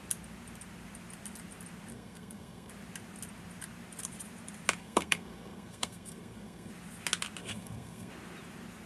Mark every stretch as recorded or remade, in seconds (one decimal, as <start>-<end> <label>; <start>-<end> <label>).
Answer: 0.0-1.9 recorded; 1.9-2.7 remade; 2.7-4.8 recorded; 4.8-6.7 remade; 6.7-7.4 recorded; 7.4-8.1 remade; 8.1-8.9 recorded